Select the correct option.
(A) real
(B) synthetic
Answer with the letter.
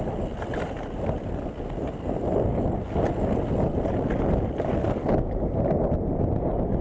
A